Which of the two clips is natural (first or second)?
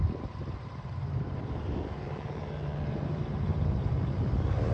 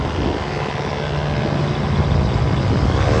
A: second